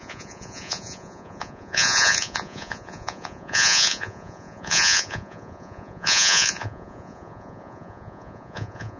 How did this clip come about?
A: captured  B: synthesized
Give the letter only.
B